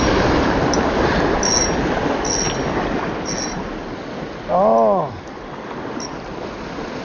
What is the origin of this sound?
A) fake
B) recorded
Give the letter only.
B